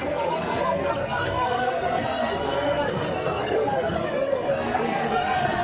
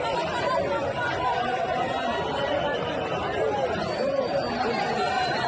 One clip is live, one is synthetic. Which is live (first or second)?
second